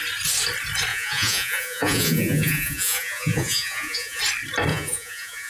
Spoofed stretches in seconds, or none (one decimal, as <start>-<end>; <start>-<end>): 0.9-4.2; 4.7-5.5